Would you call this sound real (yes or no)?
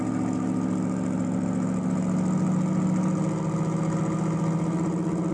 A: yes